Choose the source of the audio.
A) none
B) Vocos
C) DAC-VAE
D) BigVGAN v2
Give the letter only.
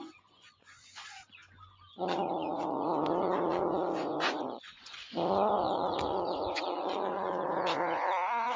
B